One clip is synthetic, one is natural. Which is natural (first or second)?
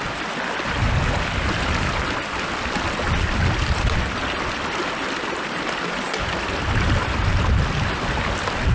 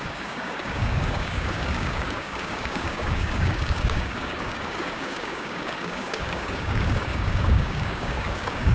first